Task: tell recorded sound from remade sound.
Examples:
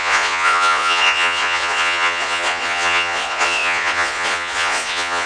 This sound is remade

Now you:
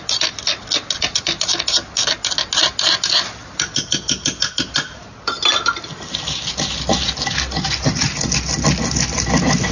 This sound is recorded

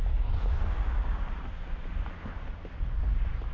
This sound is recorded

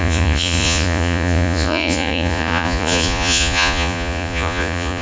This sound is remade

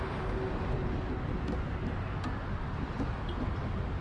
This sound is recorded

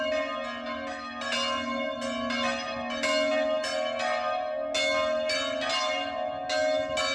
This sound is recorded